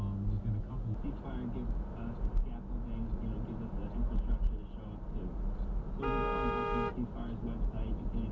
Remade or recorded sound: recorded